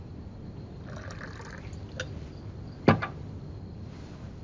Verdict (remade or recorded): recorded